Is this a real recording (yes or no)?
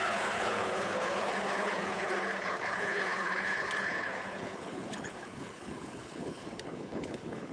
no